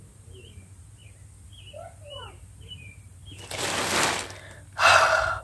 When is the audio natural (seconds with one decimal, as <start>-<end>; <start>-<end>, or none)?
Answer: 1.0-2.3; 3.2-5.4